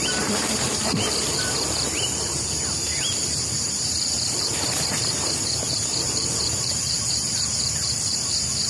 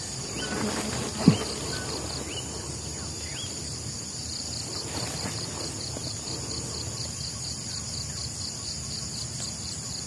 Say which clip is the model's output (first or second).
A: first